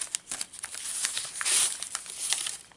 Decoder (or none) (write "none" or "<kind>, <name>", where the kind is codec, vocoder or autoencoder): none